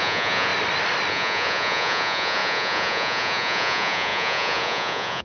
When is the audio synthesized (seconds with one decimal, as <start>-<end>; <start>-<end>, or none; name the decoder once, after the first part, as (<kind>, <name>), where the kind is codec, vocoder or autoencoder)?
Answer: 0.0-0.5 (vocoder, Vocos); 1.1-5.2